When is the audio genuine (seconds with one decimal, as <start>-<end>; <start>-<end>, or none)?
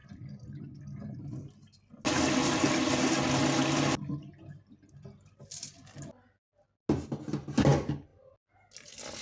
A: 0.0-9.2